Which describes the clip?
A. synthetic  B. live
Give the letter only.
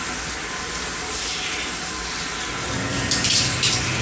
B